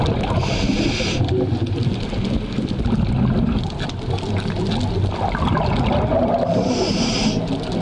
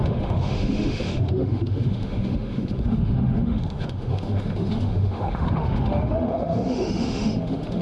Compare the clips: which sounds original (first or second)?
first